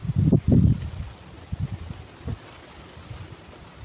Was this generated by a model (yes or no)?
no